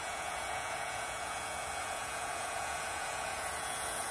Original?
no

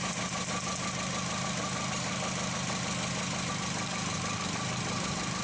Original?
yes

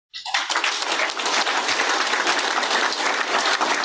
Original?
yes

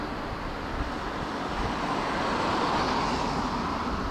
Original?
yes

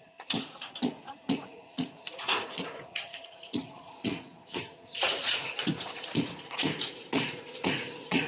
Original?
no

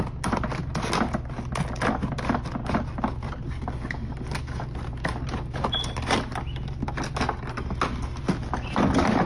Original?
yes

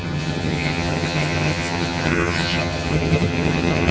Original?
no